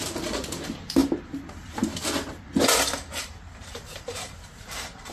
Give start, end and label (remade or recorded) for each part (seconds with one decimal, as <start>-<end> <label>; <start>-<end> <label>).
0.0-1.0 remade; 1.0-2.9 recorded; 2.9-5.1 remade